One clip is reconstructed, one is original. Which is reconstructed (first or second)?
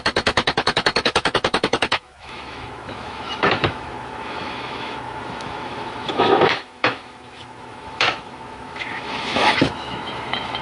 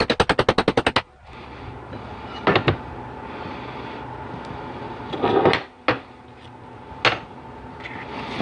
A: first